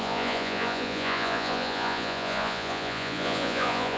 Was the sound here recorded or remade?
remade